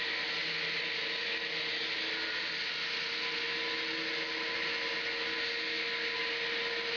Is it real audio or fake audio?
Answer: real